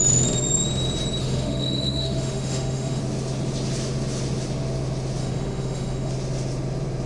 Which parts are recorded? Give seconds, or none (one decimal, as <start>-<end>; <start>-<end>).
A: 0.0-1.2; 3.0-5.2; 6.1-7.1